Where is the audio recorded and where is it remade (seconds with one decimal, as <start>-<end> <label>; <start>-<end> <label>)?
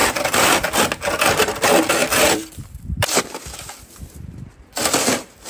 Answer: 0.0-0.7 remade; 0.7-2.0 recorded; 2.0-3.2 remade; 3.2-5.5 recorded